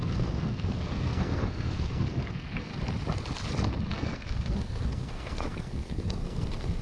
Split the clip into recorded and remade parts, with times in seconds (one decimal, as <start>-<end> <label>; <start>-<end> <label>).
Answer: 0.0-2.7 remade; 2.7-3.9 recorded; 3.9-6.8 remade